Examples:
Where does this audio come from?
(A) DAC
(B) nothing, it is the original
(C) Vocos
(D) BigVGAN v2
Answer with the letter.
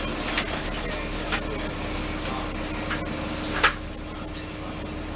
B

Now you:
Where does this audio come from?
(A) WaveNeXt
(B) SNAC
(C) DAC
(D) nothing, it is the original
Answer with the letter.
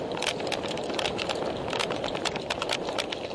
D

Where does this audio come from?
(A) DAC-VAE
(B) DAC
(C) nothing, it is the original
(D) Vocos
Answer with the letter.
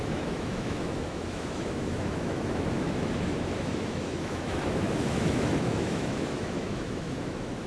A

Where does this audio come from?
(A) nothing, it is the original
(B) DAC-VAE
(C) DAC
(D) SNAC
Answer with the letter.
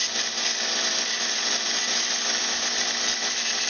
A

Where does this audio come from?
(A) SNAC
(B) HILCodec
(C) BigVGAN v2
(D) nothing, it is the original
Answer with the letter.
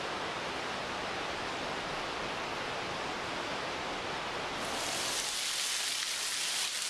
D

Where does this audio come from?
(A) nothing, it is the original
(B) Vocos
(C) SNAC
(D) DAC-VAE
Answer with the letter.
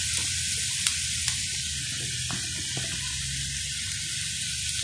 A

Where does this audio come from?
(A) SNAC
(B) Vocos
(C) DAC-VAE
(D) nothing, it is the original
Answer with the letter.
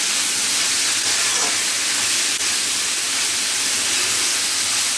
D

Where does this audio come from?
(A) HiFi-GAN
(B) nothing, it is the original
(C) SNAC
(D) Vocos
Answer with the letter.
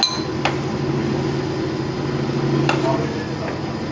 B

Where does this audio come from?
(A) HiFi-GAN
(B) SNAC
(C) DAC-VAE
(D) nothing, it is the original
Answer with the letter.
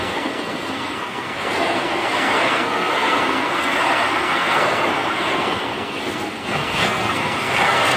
B